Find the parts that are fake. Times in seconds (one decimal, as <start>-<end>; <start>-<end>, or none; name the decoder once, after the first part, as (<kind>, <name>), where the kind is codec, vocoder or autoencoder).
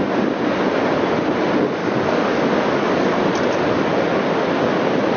1.8-3.3 (codec, DAC)